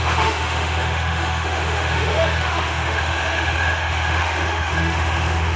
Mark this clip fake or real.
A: fake